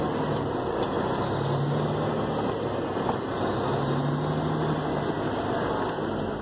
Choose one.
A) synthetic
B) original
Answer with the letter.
B